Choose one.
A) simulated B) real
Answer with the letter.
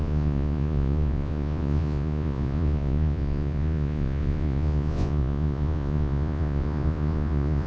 A